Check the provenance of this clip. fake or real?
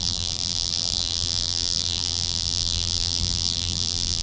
fake